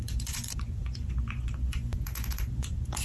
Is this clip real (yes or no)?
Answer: no